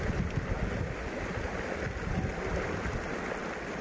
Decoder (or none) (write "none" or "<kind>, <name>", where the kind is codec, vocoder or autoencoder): none